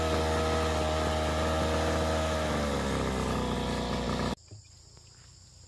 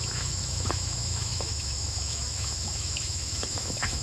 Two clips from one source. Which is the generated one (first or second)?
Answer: second